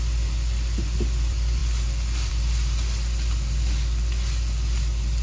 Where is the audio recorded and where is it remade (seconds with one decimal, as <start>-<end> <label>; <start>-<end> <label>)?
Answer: 0.0-5.2 recorded